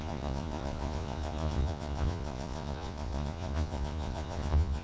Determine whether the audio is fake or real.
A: fake